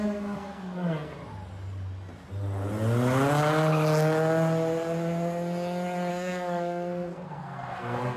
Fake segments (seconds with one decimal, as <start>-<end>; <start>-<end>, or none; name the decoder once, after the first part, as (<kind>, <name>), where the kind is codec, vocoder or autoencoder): 0.0-1.2 (codec, SNAC); 6.1-8.2